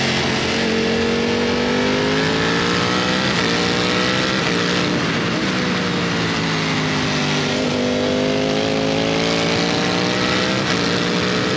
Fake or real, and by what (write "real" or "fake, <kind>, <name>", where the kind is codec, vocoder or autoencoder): real